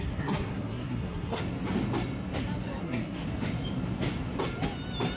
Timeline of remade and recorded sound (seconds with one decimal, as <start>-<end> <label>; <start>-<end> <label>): 0.0-1.4 remade; 1.4-2.8 recorded; 2.8-3.2 remade; 3.2-5.2 recorded